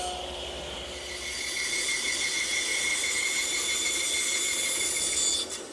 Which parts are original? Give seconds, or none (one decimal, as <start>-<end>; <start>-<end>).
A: 0.0-2.7; 4.0-5.7